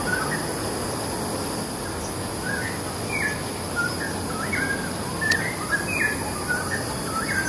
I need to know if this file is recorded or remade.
recorded